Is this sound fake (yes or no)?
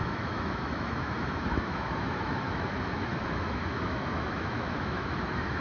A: yes